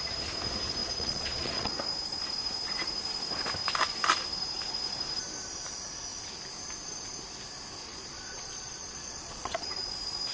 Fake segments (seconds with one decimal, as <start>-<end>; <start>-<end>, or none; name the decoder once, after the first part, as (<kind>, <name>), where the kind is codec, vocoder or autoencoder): 0.8-1.8 (vocoder, Vocos); 7.8-9.9